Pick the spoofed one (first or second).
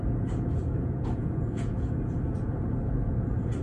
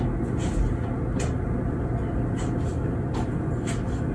first